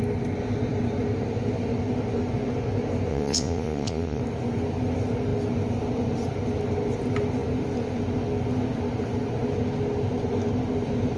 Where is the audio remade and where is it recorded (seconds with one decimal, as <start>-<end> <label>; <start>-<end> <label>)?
0.0-3.1 recorded; 3.1-4.2 remade; 4.2-11.2 recorded